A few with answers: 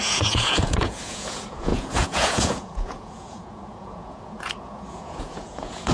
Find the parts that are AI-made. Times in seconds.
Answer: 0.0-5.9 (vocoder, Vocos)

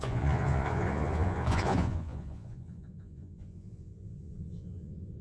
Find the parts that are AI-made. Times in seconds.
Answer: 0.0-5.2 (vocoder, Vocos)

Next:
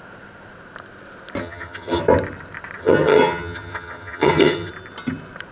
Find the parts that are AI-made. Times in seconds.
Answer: 1.4-2.0 (vocoder, HiFi-GAN); 2.8-4.7